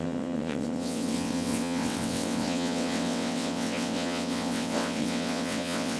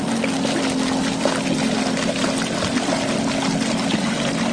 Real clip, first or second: second